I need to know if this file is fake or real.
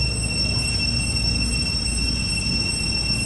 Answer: real